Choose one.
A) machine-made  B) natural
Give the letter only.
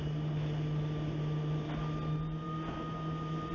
B